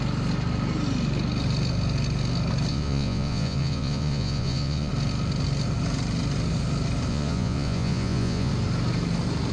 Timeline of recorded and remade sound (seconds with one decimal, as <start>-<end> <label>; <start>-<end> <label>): 0.0-2.7 recorded; 2.7-4.9 remade; 4.9-7.1 recorded; 7.1-8.5 remade; 8.5-9.5 recorded